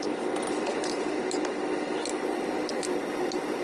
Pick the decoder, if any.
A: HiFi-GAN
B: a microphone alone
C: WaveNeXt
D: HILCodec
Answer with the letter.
B